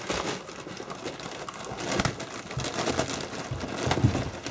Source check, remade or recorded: recorded